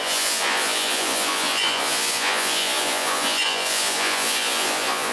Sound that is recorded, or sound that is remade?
remade